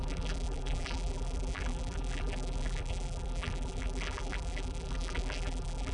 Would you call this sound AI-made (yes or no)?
yes